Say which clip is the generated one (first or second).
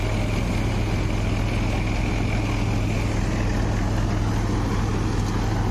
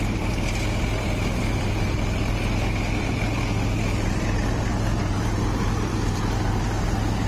second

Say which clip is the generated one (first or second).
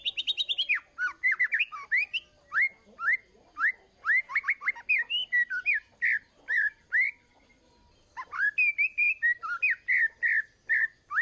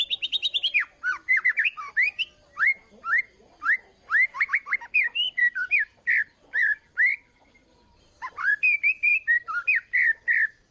second